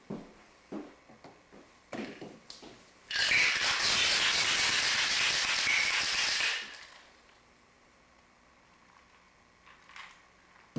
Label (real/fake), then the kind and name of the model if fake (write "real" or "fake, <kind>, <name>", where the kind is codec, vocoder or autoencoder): real